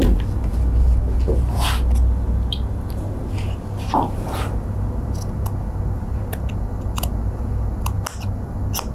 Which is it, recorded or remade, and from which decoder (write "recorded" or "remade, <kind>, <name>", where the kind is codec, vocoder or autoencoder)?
recorded